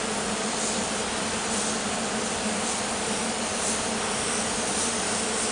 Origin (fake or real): fake